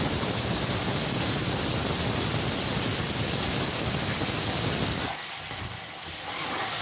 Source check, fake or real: real